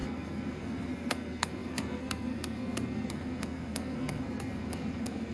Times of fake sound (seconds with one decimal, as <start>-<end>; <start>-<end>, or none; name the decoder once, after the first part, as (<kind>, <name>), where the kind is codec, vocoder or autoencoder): 0.0-5.3 (codec, SNAC)